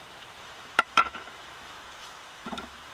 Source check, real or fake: fake